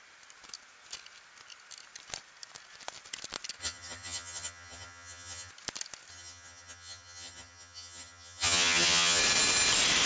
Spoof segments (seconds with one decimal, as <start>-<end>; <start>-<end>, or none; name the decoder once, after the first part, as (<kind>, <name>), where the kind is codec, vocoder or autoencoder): 3.6-5.5 (vocoder, HiFi-GAN); 6.1-9.2